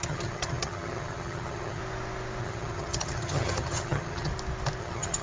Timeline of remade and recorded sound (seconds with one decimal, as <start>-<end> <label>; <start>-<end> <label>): 0.0-1.8 remade; 1.8-2.4 recorded; 2.4-4.3 remade; 4.3-4.8 recorded; 4.8-5.2 remade